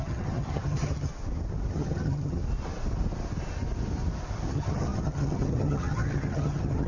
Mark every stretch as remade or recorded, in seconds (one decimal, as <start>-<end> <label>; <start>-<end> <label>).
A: 0.0-1.1 remade; 1.1-1.7 recorded; 1.7-2.4 remade; 2.4-4.5 recorded; 4.5-6.9 remade